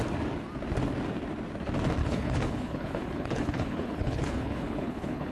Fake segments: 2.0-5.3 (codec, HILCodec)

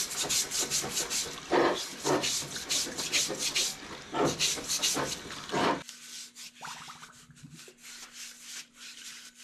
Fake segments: none

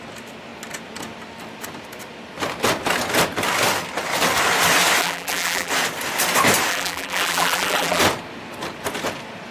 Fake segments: 5.0-5.7 (vocoder, BigVGAN v2); 6.7-8.0